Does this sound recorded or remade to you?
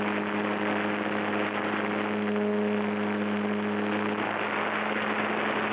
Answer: recorded